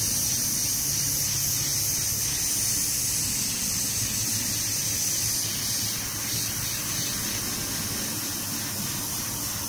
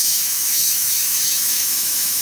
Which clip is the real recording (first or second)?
first